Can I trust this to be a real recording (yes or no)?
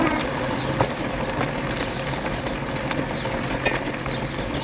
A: yes